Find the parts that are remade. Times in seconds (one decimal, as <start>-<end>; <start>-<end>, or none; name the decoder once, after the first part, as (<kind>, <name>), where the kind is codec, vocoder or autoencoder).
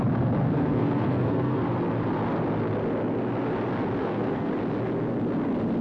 0.4-1.6 (codec, SNAC); 4.0-4.5